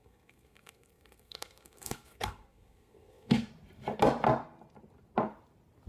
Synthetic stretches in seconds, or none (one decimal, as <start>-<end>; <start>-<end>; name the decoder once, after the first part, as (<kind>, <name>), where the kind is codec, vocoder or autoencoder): 0.0-3.5 (codec, SNAC)